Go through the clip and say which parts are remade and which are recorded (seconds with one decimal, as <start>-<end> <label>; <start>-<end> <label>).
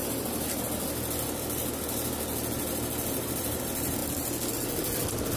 0.0-3.2 recorded; 3.2-4.0 remade; 4.0-4.5 recorded; 4.5-5.4 remade